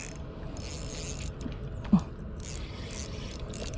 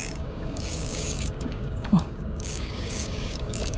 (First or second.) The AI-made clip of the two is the second